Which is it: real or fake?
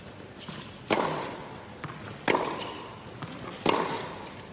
real